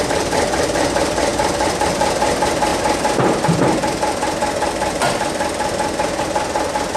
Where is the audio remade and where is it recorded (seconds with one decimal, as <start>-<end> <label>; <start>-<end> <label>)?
0.0-1.3 recorded; 1.3-1.9 remade; 1.9-7.0 recorded